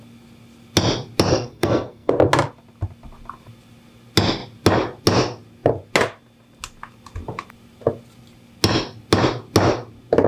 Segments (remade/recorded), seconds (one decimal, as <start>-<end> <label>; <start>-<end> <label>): 0.0-1.3 recorded; 1.3-2.1 remade; 2.1-10.3 recorded